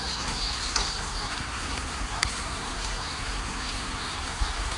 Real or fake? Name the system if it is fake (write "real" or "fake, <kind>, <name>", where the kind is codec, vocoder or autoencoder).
fake, codec, SNAC